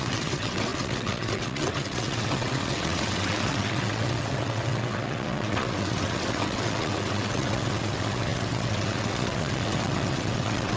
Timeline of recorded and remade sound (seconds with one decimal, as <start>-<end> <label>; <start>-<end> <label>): 0.0-10.8 remade